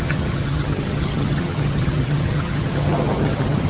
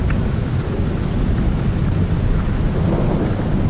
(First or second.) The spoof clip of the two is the first